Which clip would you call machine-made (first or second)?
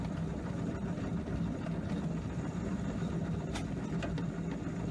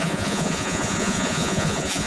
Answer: second